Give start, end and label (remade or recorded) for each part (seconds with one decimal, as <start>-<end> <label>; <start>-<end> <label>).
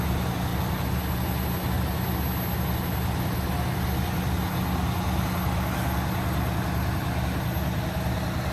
0.0-8.5 recorded